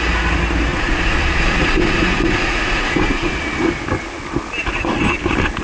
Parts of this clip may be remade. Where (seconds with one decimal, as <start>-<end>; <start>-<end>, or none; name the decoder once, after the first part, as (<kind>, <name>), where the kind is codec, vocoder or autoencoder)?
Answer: 0.7-3.3 (vocoder, Vocos)